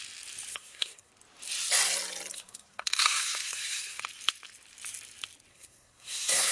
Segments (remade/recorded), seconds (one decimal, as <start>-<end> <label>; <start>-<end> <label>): 0.0-0.5 recorded; 0.5-1.1 remade; 1.1-2.3 recorded; 2.3-4.0 remade; 4.0-5.5 recorded; 5.5-6.5 remade